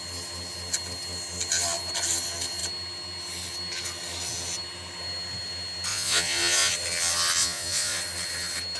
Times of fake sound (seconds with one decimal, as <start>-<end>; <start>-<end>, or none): 5.9-6.7; 7.4-8.0